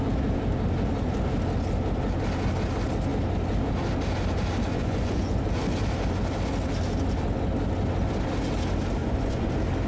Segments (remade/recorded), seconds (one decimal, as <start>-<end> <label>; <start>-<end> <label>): 0.0-4.7 recorded; 4.7-5.4 remade; 5.4-9.0 recorded; 9.0-9.5 remade; 9.5-9.9 recorded